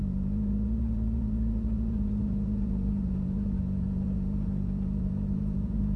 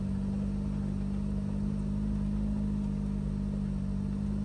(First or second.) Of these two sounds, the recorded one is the second